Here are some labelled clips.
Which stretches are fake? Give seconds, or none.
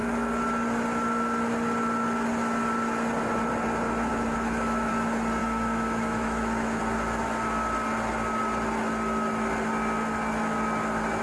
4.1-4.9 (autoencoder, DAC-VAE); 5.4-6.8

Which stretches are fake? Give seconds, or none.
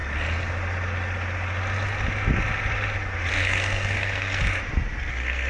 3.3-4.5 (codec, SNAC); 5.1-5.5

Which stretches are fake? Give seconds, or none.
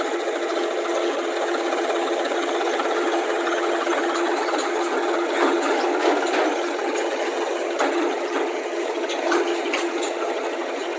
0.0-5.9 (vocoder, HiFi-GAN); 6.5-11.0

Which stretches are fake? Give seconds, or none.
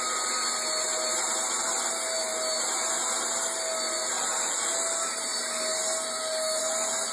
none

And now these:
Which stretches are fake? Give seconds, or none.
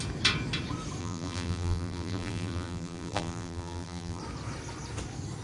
1.0-4.2 (vocoder, BigVGAN v2)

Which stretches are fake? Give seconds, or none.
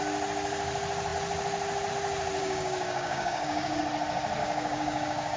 2.4-3.8 (codec, DAC); 4.4-5.4